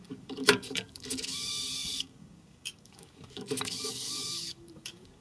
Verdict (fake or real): fake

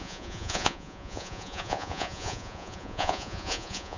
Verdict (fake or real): fake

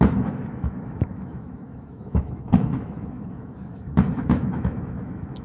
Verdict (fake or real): fake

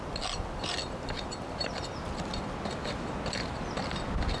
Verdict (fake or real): real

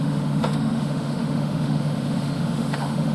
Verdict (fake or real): fake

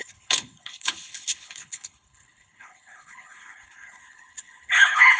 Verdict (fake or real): fake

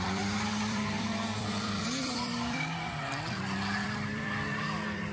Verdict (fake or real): fake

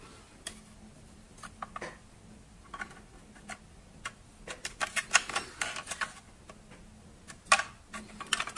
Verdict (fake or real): real